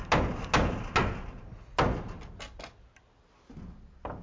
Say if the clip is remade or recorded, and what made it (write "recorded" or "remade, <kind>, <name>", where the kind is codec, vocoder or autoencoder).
recorded